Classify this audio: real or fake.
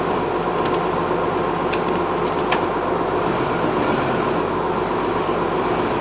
real